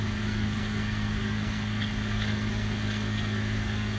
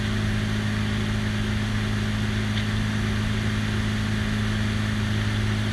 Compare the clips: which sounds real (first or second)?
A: second